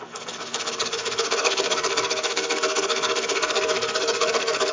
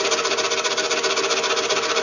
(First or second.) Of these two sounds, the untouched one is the second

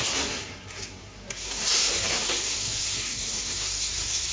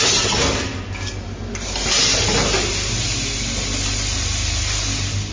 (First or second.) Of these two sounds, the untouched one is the second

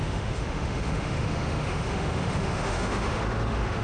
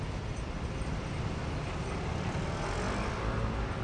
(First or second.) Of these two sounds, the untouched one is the second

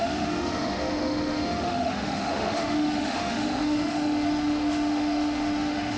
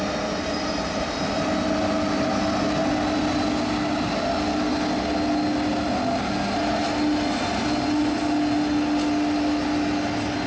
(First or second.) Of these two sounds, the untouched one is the second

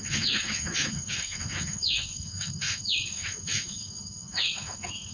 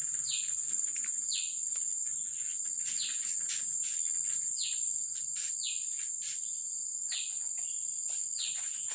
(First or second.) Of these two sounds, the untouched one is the second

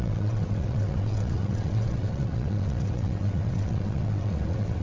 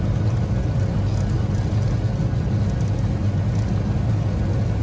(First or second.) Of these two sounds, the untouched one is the second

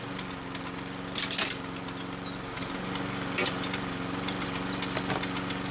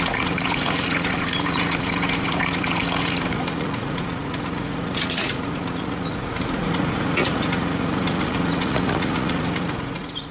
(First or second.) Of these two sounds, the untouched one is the first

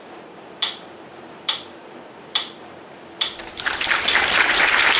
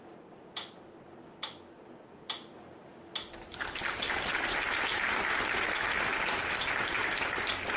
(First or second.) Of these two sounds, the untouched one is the second